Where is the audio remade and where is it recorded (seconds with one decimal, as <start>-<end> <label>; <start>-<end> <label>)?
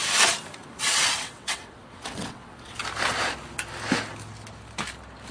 0.0-0.6 recorded; 0.6-2.8 remade; 2.8-5.3 recorded